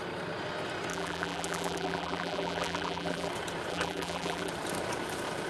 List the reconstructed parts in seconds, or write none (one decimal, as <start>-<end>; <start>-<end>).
0.9-3.3; 3.7-4.5